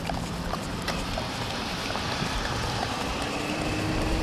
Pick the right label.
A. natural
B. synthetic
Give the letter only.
B